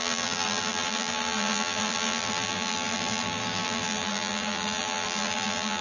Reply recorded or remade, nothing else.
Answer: remade